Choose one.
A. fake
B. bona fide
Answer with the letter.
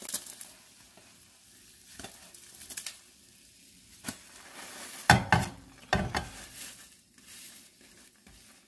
B